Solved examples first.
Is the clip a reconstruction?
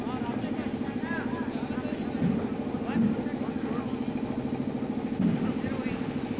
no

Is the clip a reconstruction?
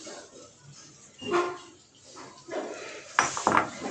no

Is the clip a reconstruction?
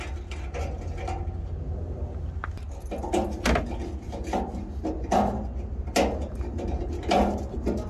no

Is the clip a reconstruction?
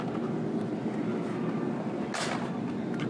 no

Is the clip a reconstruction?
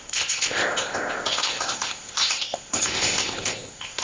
yes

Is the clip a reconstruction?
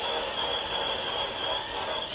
no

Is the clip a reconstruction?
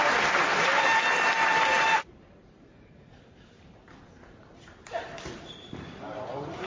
yes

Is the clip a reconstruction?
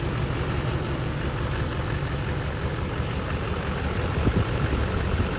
no